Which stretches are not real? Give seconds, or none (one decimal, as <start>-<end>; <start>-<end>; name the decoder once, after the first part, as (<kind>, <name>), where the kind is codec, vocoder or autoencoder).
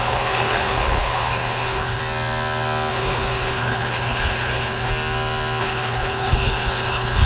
0.0-2.0 (codec, HILCodec); 2.9-4.9; 5.6-7.3